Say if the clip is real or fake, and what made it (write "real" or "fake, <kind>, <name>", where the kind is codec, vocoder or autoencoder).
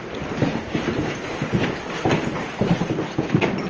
real